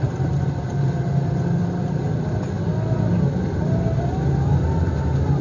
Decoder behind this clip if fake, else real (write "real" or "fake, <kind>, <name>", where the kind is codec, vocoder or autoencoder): real